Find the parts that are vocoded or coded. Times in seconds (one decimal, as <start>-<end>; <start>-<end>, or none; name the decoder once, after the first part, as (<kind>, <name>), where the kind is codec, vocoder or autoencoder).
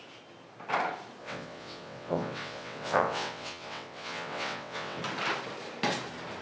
1.2-5.0 (vocoder, WaveNeXt)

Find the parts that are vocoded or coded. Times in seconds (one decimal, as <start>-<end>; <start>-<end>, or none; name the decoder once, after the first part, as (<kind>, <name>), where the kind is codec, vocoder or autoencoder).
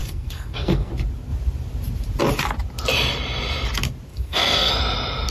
0.0-0.9 (codec, SNAC); 4.1-4.7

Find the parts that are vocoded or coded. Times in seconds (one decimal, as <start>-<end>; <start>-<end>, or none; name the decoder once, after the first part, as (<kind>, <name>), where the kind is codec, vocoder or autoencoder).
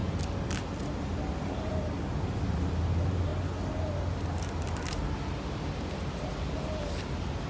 none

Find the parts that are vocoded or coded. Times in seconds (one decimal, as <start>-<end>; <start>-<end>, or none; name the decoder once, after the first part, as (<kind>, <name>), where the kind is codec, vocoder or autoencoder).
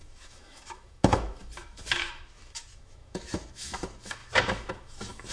0.0-5.3 (autoencoder, DAC-VAE)